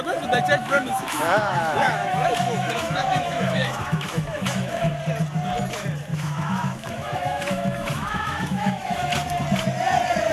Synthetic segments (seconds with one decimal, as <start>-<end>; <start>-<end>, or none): 0.6-4.9; 6.1-9.1